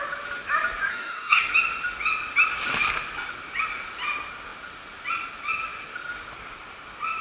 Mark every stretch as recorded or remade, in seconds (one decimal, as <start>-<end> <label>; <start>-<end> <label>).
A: 0.0-0.9 recorded; 0.9-1.4 remade; 1.4-7.2 recorded

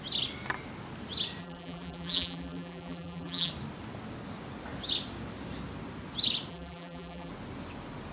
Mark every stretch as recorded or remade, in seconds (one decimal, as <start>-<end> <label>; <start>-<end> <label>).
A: 0.0-1.4 recorded; 1.4-3.5 remade; 3.5-6.5 recorded; 6.5-7.3 remade; 7.3-8.1 recorded

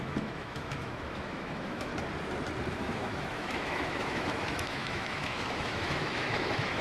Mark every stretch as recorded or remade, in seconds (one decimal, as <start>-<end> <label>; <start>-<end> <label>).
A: 0.0-1.9 remade; 1.9-2.7 recorded; 2.7-6.8 remade